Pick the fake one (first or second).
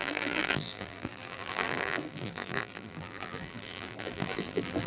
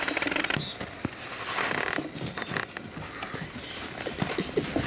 first